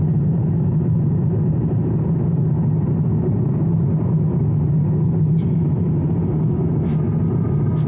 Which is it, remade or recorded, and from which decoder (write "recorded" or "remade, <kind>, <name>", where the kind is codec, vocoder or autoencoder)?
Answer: recorded